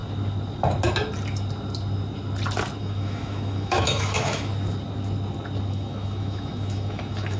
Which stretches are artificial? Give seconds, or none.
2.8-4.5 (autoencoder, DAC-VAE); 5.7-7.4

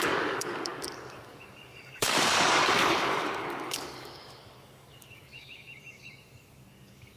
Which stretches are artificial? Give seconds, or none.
0.0-7.2 (codec, DAC)

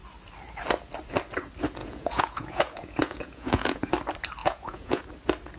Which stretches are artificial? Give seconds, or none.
1.8-3.9 (vocoder, Vocos); 4.4-5.0

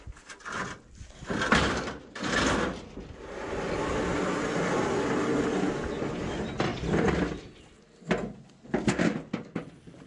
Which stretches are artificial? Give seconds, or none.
none

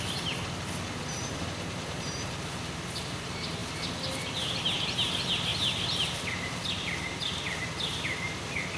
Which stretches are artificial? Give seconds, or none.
none

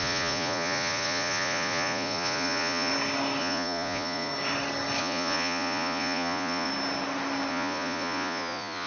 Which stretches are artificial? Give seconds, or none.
0.0-2.9 (vocoder, Vocos); 3.4-4.3; 5.0-6.7; 7.5-8.9

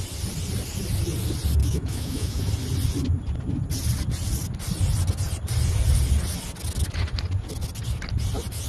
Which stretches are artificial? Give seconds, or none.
1.6-2.4 (autoencoder, DAC-VAE)